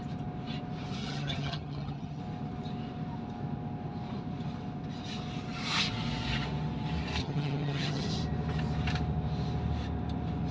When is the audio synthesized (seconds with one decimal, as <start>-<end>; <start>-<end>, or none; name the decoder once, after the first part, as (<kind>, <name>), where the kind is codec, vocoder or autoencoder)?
1.0-2.2 (vocoder, HiFi-GAN); 7.2-8.1